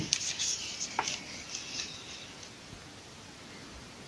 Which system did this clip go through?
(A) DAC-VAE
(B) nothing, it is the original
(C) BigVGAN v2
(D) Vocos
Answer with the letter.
B